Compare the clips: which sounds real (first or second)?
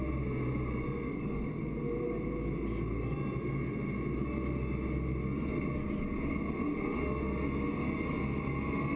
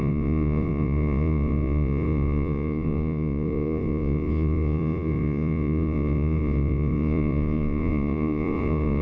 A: first